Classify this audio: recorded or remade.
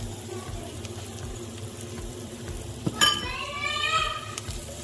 remade